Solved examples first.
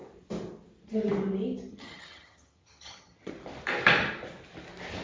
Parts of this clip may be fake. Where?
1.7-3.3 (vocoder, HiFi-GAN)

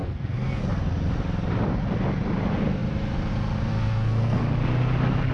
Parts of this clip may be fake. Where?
0.0-0.6 (codec, SNAC); 3.7-4.4

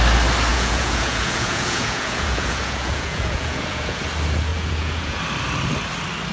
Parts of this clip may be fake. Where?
0.5-4.0 (vocoder, Vocos); 4.5-5.2

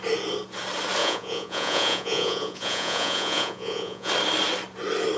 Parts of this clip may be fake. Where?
1.0-4.1 (vocoder, Vocos)

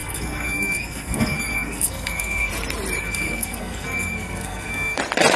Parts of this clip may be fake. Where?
0.0-2.5 (codec, SNAC); 3.0-5.0